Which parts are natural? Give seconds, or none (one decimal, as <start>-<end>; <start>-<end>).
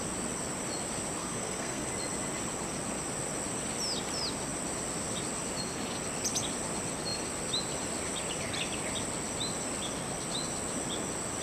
0.0-1.2; 1.9-11.4